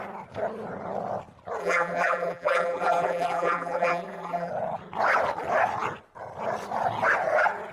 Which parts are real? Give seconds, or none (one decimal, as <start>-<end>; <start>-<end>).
0.0-1.6; 4.5-7.7